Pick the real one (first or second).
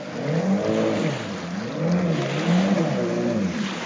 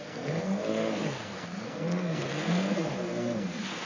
first